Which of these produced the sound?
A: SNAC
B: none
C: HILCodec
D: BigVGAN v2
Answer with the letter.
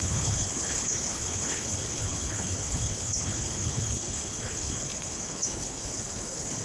C